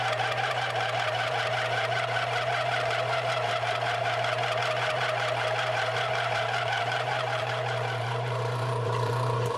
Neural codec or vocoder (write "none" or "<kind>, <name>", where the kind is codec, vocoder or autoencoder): vocoder, BigVGAN v2